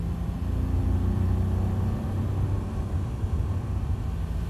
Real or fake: real